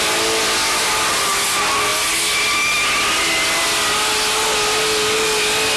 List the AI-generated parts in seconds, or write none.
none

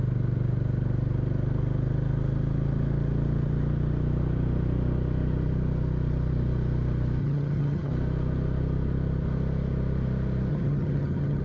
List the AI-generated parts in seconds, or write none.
7.2-7.9; 10.5-11.4

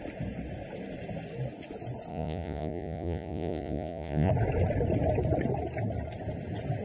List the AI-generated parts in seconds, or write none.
2.1-4.3